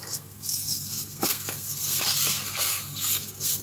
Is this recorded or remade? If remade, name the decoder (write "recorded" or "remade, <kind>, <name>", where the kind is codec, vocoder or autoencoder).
remade, codec, SNAC